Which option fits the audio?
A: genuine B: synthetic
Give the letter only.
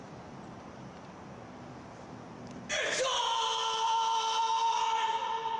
B